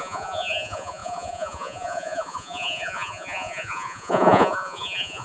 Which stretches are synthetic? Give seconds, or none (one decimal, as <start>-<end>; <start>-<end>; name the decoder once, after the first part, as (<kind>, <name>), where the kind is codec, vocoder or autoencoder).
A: 0.0-5.2 (vocoder, Vocos)